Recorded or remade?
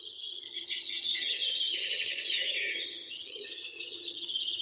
remade